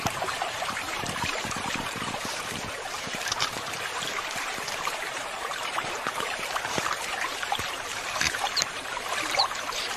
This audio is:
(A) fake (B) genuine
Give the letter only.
A